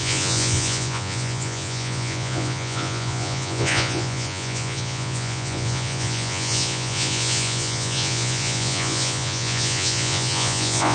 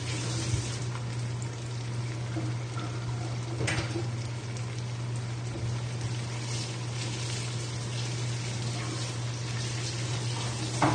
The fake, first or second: first